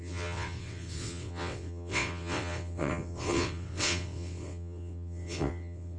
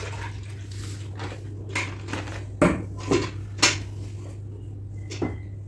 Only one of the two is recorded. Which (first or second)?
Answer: second